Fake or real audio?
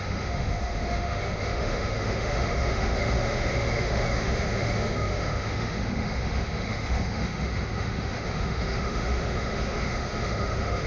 fake